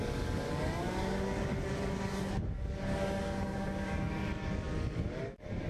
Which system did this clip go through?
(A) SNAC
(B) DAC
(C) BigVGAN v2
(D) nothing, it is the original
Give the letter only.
B